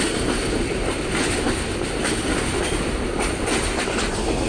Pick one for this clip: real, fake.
real